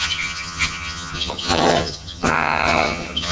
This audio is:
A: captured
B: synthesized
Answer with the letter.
B